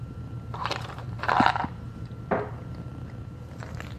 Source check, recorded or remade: recorded